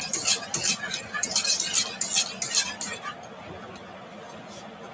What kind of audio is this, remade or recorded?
recorded